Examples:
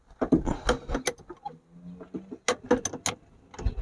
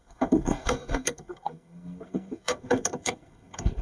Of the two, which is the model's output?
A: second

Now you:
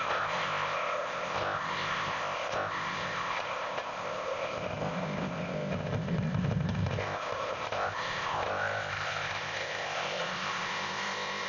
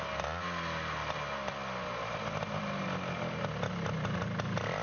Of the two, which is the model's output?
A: first